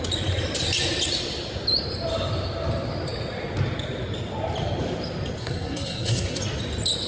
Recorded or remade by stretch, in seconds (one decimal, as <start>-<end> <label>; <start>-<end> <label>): 0.0-5.4 recorded; 5.4-6.4 remade; 6.4-7.1 recorded